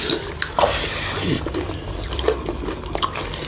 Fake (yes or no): no